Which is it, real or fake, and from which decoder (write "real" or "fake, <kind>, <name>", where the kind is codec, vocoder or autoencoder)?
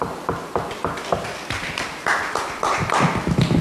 real